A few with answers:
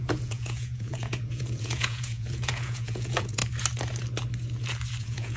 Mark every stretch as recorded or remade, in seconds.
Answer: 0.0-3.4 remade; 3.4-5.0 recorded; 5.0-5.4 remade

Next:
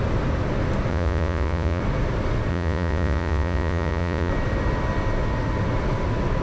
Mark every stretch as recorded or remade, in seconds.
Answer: 0.0-0.9 recorded; 0.9-1.8 remade; 1.8-2.5 recorded; 2.5-4.3 remade; 4.3-6.4 recorded